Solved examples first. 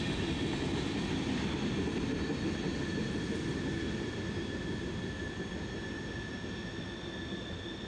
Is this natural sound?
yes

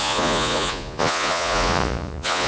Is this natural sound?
no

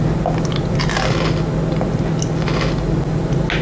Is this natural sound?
yes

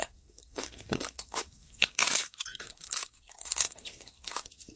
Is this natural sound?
no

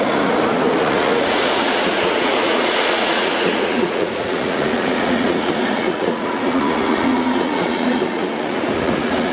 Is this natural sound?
no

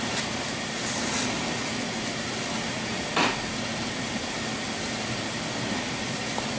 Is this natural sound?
yes